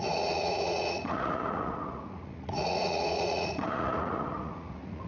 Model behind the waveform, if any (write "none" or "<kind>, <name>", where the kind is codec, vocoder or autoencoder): vocoder, Vocos